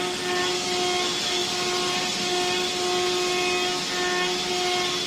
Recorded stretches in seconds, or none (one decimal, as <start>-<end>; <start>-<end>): 0.0-5.1